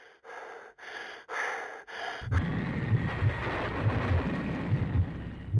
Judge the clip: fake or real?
real